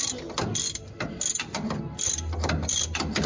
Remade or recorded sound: recorded